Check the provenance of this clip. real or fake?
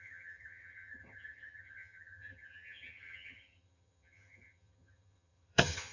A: fake